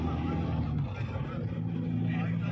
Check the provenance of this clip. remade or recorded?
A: recorded